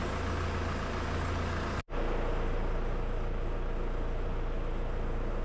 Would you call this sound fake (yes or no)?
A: no